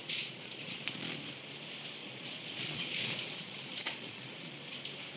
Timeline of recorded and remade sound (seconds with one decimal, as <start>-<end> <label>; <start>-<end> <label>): 0.0-0.8 remade; 0.8-2.0 recorded; 2.0-4.5 remade; 4.5-5.2 recorded